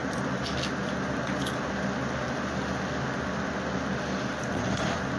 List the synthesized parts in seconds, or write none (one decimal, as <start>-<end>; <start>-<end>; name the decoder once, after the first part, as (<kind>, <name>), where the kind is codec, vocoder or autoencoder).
none